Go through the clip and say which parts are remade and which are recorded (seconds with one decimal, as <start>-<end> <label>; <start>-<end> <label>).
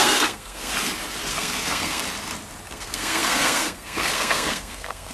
0.0-0.7 remade; 0.7-1.3 recorded; 1.3-2.0 remade; 2.0-2.7 recorded; 2.7-5.1 remade